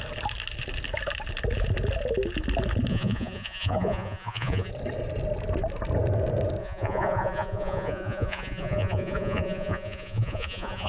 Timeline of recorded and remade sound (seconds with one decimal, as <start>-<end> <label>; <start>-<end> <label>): 0.0-2.9 recorded; 2.9-4.7 remade; 4.7-6.6 recorded; 6.6-10.9 remade